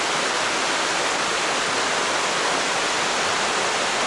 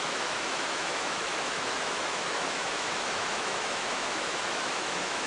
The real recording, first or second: first